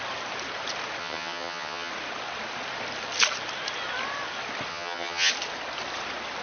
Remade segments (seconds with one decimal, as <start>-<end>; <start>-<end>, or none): 1.0-1.9; 4.7-5.3